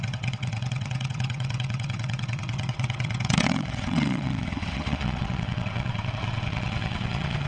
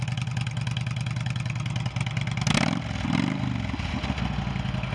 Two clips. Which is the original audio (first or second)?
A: second